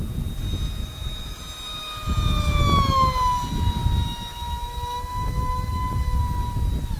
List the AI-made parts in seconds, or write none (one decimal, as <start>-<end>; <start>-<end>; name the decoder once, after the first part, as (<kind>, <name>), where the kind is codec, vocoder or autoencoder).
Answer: 0.8-1.4 (autoencoder, DAC-VAE); 3.8-6.2